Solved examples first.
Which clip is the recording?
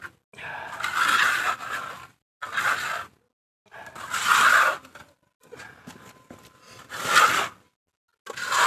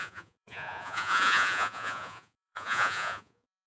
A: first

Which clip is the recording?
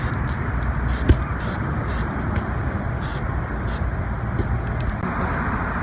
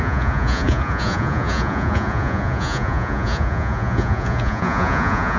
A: first